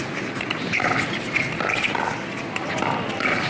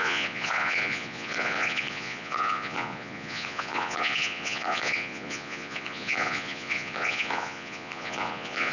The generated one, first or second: second